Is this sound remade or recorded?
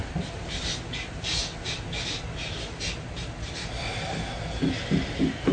recorded